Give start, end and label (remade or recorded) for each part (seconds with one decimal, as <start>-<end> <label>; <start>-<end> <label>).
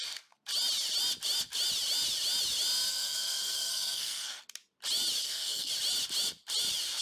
0.0-2.9 recorded; 2.9-4.4 remade; 4.4-5.2 recorded; 5.2-5.7 remade; 5.7-7.0 recorded